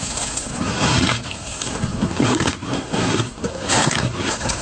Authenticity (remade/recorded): remade